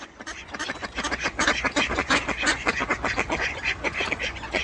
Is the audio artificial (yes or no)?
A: yes